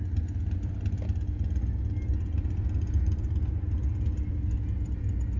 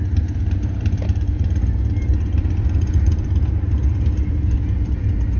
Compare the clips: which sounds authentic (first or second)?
first